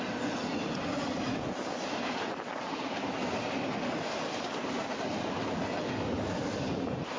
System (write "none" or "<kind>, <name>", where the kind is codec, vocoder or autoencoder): none